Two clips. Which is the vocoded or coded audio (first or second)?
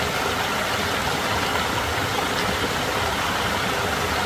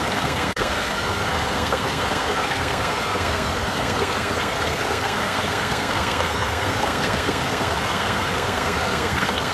second